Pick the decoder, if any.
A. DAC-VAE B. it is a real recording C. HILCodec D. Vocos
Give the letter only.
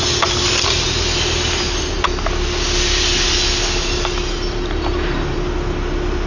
B